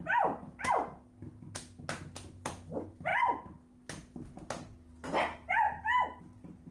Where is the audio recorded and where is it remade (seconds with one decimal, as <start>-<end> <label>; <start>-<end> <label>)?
0.0-6.7 recorded